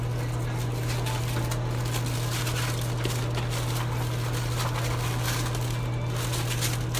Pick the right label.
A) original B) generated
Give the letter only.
A